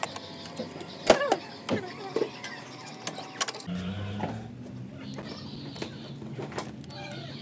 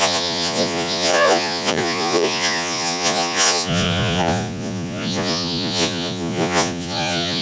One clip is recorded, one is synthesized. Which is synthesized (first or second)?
second